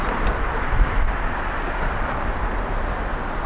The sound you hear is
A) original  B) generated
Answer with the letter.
A